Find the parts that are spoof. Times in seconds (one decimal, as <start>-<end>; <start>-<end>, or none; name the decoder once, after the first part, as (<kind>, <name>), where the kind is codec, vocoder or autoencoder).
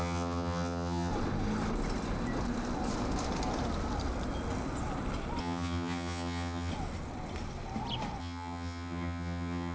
0.0-1.1 (vocoder, HiFi-GAN); 5.4-6.7; 8.2-9.7